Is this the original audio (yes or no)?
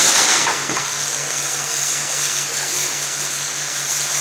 no